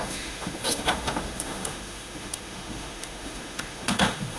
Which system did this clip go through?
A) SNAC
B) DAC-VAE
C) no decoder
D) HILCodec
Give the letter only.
B